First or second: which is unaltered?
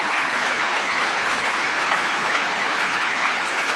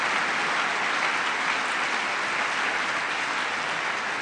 second